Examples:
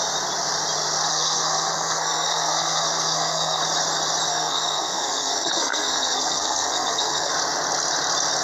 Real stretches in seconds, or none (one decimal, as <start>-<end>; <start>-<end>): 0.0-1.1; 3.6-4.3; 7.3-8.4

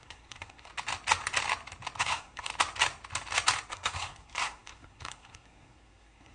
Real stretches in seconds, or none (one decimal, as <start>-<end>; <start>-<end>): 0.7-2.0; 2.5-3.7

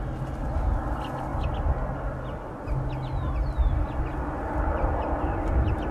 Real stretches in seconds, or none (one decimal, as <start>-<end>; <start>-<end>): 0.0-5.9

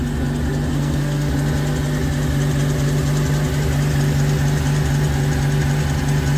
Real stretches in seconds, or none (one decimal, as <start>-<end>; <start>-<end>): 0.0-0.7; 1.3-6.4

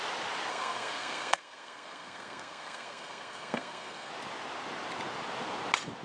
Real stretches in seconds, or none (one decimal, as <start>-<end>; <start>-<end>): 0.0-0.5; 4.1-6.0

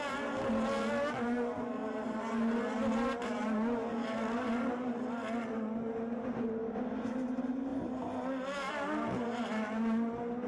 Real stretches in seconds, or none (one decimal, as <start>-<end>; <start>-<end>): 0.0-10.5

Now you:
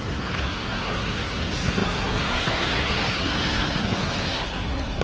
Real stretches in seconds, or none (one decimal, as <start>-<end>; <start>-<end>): none